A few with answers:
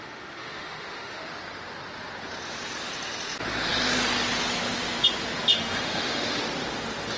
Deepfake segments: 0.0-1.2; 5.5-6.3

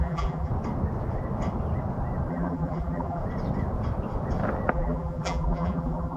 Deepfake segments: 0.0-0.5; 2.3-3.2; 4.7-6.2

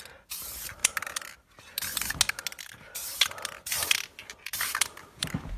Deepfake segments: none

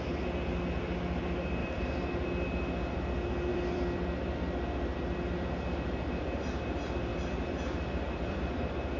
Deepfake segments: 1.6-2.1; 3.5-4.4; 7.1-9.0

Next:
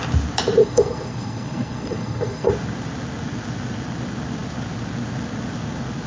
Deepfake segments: 0.6-2.5

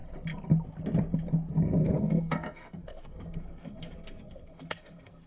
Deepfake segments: 1.8-5.3

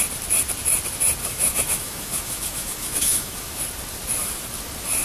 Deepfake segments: 1.2-3.6

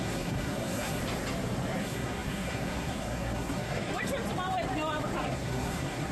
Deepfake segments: 0.0-1.0; 1.8-3.9; 5.2-6.1